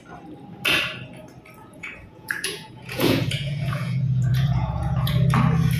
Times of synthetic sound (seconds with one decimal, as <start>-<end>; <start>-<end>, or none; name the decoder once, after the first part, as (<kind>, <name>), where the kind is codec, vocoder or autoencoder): 1.6-5.1 (vocoder, Vocos)